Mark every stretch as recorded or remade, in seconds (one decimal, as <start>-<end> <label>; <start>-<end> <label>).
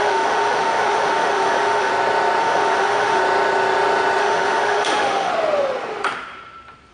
0.0-1.9 remade; 1.9-2.4 recorded; 2.4-3.2 remade; 3.2-4.2 recorded; 4.2-5.3 remade; 5.3-6.9 recorded